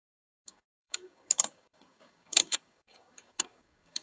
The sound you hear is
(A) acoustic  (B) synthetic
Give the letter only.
B